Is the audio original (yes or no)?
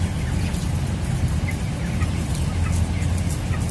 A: yes